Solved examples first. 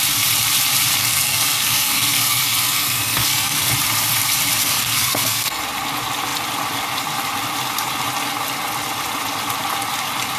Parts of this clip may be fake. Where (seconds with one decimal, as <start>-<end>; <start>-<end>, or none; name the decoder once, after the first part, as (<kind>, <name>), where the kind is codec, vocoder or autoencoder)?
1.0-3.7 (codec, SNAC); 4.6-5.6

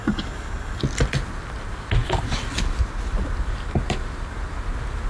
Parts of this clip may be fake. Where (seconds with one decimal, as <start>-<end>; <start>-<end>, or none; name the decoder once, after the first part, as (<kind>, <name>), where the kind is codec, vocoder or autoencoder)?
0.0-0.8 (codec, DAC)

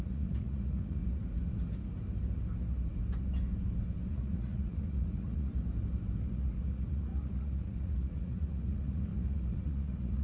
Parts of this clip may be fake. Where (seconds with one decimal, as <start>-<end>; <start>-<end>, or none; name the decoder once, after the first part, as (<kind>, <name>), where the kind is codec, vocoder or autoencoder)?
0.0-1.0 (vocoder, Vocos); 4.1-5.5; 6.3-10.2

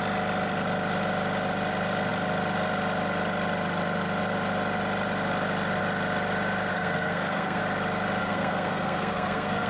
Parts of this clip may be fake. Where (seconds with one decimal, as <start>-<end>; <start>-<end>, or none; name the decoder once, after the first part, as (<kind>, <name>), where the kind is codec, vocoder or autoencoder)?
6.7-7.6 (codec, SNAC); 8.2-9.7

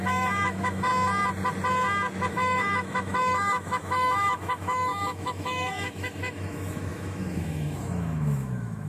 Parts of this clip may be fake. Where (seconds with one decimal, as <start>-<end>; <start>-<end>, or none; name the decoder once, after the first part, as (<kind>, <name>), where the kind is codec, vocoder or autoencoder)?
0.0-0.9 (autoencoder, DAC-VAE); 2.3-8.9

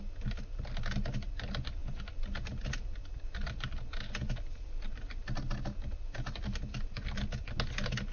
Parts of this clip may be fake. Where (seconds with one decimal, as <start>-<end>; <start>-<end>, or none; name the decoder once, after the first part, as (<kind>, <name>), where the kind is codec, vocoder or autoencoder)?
none